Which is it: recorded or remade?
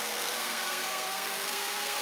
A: remade